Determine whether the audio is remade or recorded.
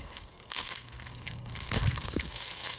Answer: remade